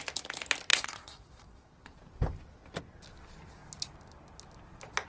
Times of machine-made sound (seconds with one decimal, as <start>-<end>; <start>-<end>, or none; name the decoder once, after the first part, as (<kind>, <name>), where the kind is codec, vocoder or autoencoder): 0.7-2.0 (vocoder, Vocos)